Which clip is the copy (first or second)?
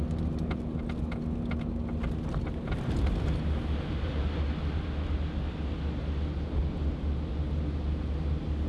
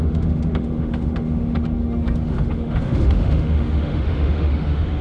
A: second